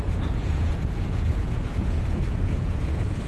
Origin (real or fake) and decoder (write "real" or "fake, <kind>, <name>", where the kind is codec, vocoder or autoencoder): fake, vocoder, Vocos